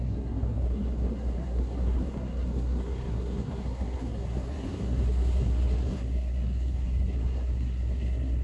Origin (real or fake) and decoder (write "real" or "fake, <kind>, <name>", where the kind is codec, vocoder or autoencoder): fake, codec, SNAC